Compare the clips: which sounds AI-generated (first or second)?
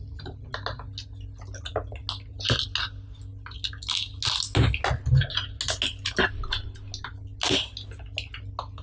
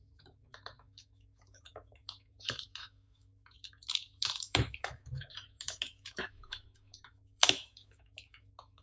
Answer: second